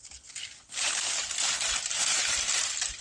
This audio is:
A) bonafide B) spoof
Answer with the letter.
A